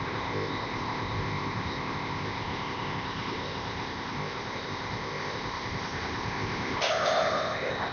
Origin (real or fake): fake